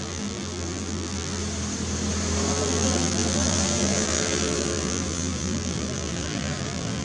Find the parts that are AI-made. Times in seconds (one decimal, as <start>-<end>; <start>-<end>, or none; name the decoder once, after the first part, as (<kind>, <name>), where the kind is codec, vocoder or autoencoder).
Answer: 0.0-1.4 (vocoder, BigVGAN v2); 2.5-7.0